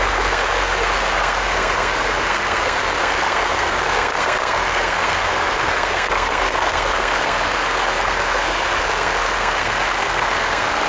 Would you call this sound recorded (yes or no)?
no